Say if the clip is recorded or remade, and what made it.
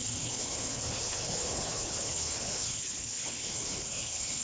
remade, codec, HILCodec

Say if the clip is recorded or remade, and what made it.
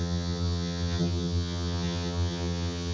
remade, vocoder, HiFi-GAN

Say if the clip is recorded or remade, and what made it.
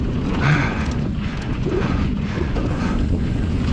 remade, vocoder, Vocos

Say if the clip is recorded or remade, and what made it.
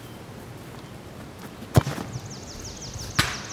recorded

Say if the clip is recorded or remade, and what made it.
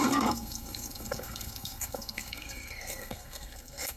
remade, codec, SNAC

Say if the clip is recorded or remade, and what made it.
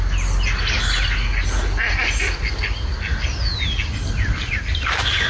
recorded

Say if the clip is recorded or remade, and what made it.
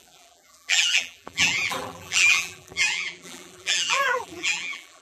remade, vocoder, BigVGAN v2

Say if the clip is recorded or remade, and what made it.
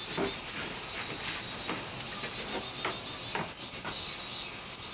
recorded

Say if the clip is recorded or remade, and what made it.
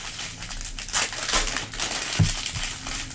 recorded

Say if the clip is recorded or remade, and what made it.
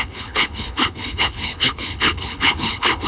remade, codec, HILCodec